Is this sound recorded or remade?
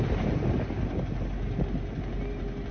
recorded